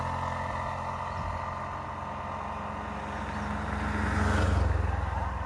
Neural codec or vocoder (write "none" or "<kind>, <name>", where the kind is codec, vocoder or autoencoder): none